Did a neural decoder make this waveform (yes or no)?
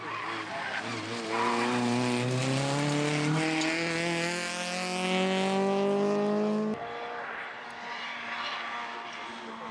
no